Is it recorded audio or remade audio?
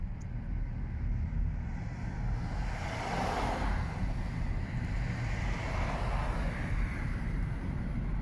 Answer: recorded